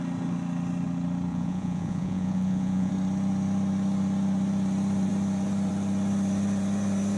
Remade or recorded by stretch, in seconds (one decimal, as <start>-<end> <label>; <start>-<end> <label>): 0.0-1.3 recorded; 1.3-2.9 remade; 2.9-7.2 recorded